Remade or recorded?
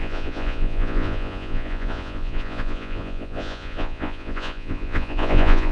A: remade